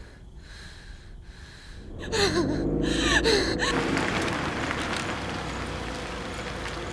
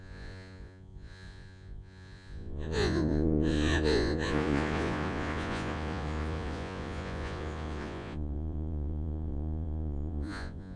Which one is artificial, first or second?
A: second